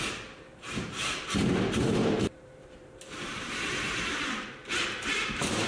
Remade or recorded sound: remade